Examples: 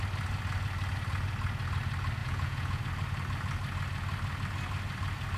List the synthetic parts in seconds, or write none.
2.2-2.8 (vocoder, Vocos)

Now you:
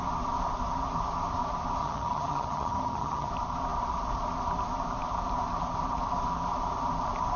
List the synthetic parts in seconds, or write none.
1.8-3.3 (vocoder, HiFi-GAN)

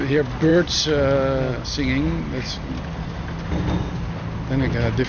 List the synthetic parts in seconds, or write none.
none

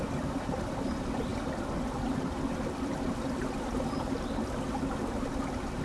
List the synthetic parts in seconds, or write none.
none

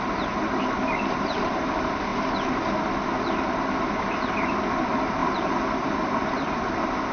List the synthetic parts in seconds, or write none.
none

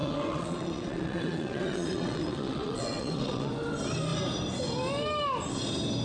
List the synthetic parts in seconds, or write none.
0.0-3.5 (vocoder, WaveNeXt)